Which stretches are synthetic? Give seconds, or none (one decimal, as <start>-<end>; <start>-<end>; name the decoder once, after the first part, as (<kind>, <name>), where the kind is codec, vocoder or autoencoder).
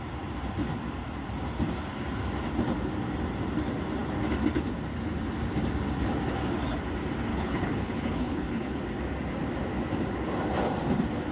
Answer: 7.3-8.8 (codec, HILCodec)